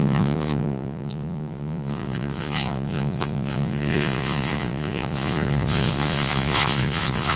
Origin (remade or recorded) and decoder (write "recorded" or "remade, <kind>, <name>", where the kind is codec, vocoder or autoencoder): remade, vocoder, Vocos